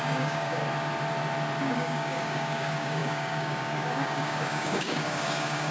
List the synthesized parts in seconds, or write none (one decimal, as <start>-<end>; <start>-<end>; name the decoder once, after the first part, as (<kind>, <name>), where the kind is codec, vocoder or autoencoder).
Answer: 0.0-0.6 (codec, DAC); 1.6-5.7